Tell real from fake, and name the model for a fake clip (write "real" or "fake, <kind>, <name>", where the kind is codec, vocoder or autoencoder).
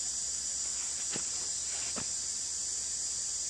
real